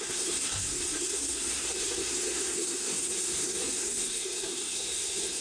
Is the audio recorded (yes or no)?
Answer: no